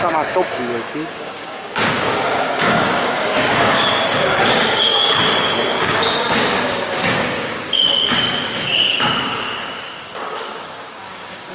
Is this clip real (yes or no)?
no